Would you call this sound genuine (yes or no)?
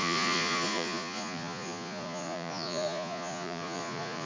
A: no